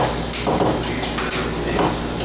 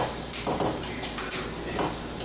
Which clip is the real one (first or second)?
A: first